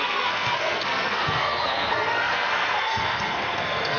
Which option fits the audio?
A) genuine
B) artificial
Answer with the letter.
B